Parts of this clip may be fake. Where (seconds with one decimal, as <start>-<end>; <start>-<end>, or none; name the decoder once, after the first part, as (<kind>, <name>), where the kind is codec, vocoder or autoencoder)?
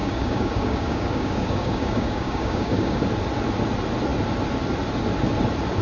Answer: 0.0-3.0 (codec, DAC)